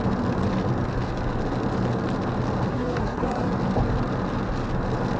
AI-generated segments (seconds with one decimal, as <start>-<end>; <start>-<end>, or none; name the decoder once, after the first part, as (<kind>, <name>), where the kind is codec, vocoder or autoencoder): 2.7-3.5 (codec, SNAC)